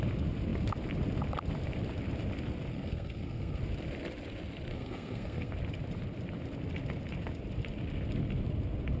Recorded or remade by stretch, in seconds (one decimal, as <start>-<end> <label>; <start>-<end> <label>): 0.0-2.7 recorded; 2.7-3.6 remade; 3.6-4.7 recorded; 4.7-5.5 remade; 5.5-9.0 recorded